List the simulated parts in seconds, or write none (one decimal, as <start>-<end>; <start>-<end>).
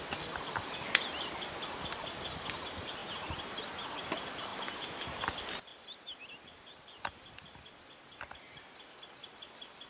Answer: 0.0-4.5; 5.3-9.9